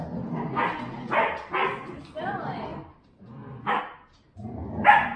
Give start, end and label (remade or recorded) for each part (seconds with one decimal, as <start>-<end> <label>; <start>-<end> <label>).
0.0-1.6 recorded; 1.6-2.2 remade; 2.2-2.7 recorded; 2.7-3.8 remade; 3.8-5.2 recorded